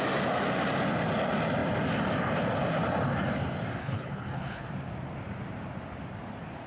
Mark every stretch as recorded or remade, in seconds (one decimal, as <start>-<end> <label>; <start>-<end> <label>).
0.0-3.8 recorded; 3.8-4.7 remade; 4.7-6.7 recorded